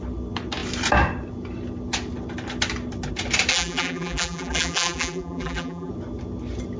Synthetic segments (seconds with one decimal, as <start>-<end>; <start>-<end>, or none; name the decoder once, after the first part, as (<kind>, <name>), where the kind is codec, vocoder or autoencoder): 3.5-5.9 (vocoder, BigVGAN v2)